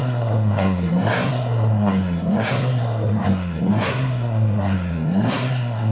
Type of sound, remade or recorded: remade